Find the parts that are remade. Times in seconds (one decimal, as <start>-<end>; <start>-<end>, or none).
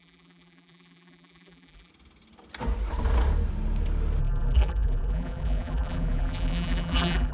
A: 0.0-1.9; 4.2-7.3